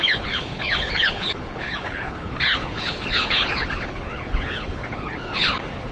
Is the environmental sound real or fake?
fake